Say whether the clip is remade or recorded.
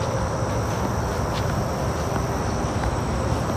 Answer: recorded